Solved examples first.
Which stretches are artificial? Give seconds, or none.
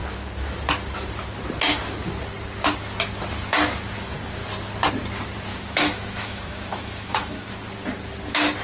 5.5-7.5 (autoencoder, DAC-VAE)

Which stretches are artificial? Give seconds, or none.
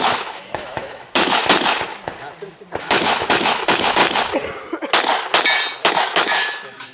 0.0-1.4 (autoencoder, DAC-VAE); 2.8-4.0; 5.9-6.9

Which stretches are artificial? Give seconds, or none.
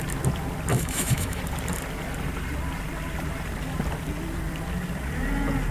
0.7-1.4 (autoencoder, DAC-VAE)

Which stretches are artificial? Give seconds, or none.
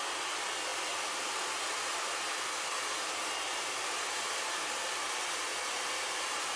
none